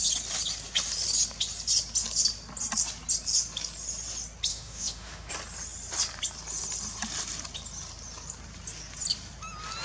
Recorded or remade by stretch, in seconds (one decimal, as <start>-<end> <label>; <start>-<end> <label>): 0.0-4.5 recorded; 4.5-5.3 remade; 5.3-9.8 recorded